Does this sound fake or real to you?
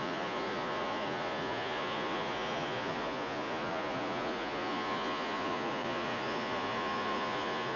fake